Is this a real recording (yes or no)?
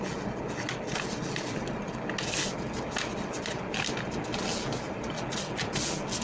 yes